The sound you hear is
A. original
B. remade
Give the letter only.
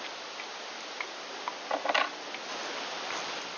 A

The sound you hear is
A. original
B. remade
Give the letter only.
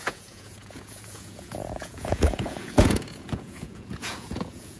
B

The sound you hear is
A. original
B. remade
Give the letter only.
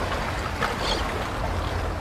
A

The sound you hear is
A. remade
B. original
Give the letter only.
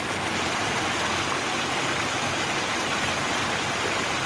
B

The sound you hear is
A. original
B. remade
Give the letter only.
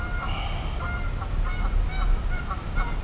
A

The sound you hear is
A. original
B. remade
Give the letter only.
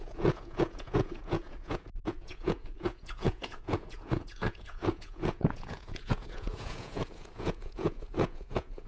B